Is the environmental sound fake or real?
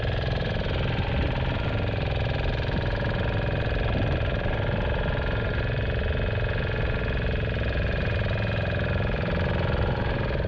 real